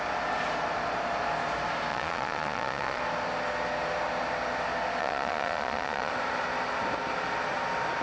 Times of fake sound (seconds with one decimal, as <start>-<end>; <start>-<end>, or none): 1.9-3.0; 5.0-6.1